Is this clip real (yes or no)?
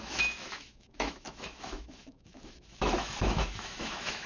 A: no